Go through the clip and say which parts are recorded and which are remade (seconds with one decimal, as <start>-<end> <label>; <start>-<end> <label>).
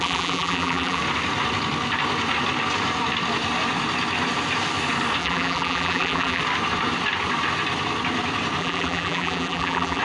0.0-1.0 remade; 1.0-5.2 recorded; 5.2-6.4 remade; 6.4-8.6 recorded; 8.6-10.0 remade